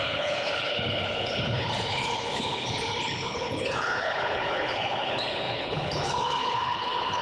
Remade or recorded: remade